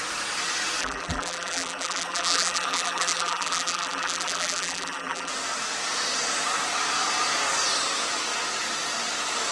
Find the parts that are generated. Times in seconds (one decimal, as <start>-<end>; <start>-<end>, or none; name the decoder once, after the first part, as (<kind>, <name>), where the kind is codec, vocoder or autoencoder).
0.8-5.3 (vocoder, BigVGAN v2)